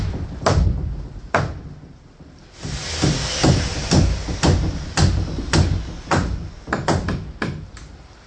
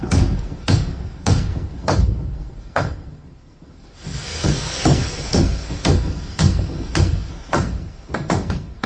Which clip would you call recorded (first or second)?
first